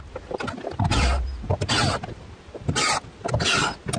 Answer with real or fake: real